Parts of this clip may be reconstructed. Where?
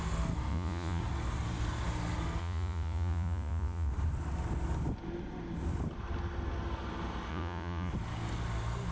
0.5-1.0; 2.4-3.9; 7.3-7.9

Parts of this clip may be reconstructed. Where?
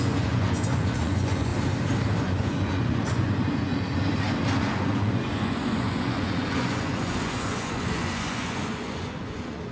0.0-1.5; 2.2-3.7; 4.6-9.7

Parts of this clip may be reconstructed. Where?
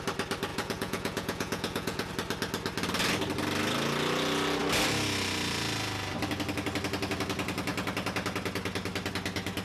0.5-2.1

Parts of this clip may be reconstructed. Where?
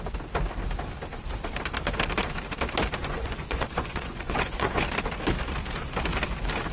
3.0-4.8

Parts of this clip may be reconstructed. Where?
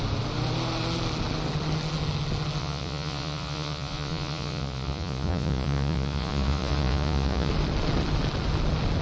2.6-7.5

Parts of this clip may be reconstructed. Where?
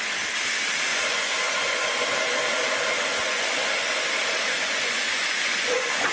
0.9-1.9; 3.2-3.9; 4.5-6.1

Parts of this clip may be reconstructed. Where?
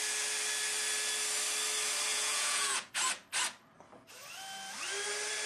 2.1-2.9